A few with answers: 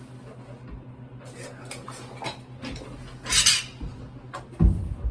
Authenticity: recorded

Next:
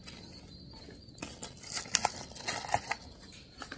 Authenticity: recorded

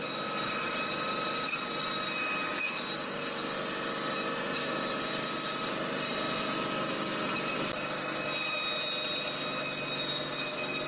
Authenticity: recorded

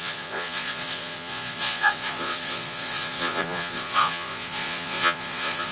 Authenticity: remade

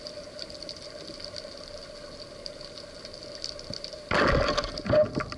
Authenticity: recorded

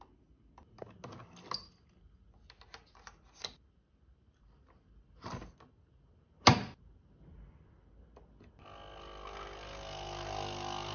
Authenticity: recorded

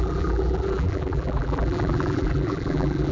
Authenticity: remade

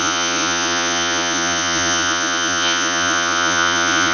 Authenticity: remade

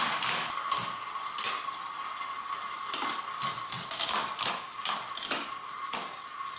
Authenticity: recorded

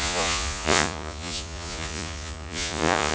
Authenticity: remade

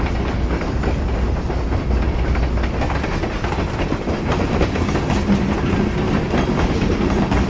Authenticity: recorded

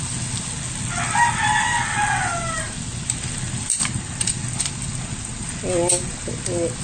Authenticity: recorded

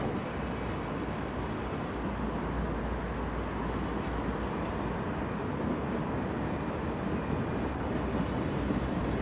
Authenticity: recorded